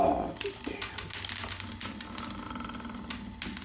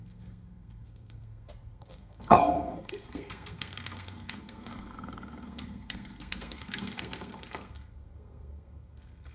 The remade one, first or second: second